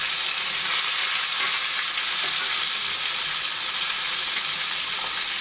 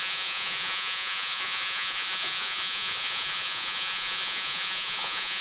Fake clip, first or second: second